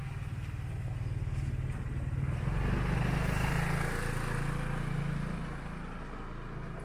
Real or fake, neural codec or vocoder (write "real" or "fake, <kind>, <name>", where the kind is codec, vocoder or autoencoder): real